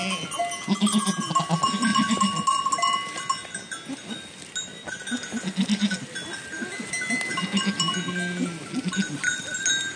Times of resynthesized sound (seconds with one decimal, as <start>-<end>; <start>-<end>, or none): none